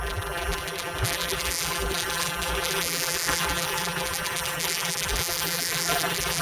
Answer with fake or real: fake